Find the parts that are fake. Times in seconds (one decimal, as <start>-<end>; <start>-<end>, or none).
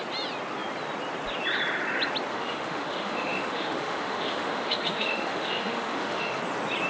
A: 2.3-6.4